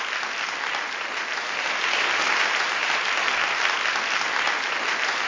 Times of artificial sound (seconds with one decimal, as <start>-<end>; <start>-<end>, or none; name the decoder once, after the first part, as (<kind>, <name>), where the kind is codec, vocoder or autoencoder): none